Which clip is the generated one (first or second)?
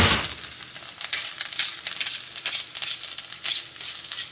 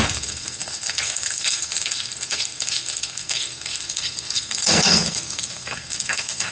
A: second